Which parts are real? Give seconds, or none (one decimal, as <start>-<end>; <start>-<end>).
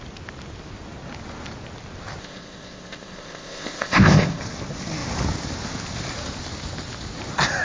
0.0-2.2; 4.4-7.6